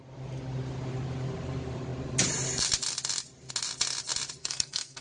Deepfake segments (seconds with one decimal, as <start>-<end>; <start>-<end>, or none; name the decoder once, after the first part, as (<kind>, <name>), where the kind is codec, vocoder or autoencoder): 4.4-5.0 (codec, SNAC)